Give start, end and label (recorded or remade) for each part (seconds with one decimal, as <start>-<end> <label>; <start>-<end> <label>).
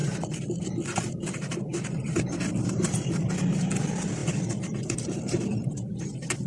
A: 0.0-0.6 remade; 0.6-1.7 recorded; 1.7-3.1 remade; 3.1-4.2 recorded; 4.2-5.7 remade; 5.7-6.5 recorded